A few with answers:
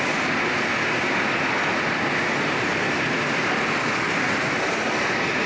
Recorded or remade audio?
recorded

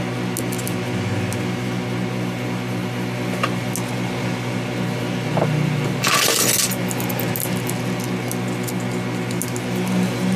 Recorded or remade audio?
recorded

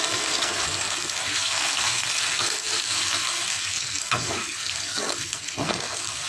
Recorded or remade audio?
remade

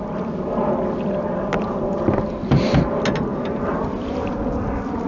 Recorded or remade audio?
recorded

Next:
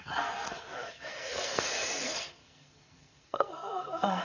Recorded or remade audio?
remade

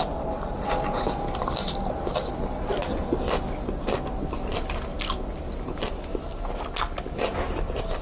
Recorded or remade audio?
recorded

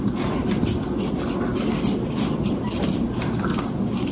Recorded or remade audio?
recorded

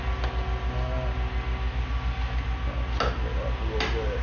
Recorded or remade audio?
recorded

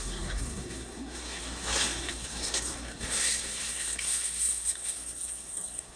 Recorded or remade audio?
remade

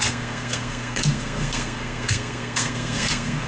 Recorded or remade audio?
remade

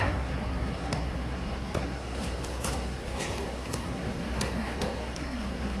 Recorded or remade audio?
remade